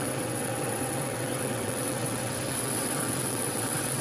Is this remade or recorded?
remade